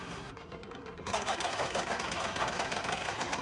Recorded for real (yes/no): no